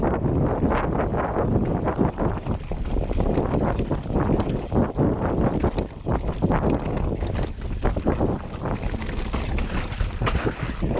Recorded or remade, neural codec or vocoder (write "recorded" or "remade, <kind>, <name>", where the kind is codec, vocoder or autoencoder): recorded